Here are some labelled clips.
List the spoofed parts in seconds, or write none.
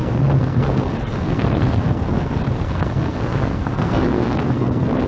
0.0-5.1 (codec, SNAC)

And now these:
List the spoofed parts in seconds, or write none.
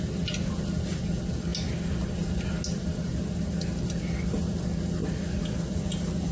none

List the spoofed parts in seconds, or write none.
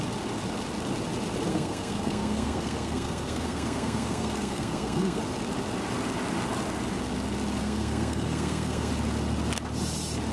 1.5-5.2 (codec, SNAC); 7.6-8.9